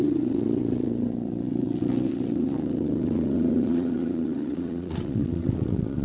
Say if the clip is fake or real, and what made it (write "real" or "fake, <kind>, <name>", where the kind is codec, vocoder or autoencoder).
fake, vocoder, WaveNeXt